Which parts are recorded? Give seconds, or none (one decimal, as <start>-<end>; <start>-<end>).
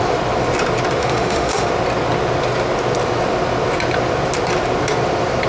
0.0-1.0; 1.7-5.5